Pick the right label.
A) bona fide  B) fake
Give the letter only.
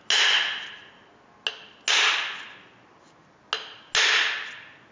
A